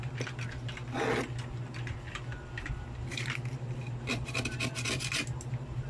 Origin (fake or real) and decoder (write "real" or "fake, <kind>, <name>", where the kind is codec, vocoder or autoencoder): real